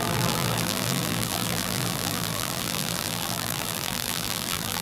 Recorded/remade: remade